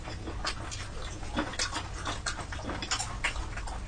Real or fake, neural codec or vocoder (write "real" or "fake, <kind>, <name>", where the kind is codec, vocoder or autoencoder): real